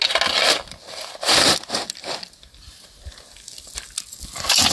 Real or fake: real